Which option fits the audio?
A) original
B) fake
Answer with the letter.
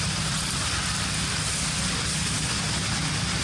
A